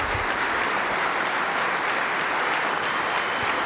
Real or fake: real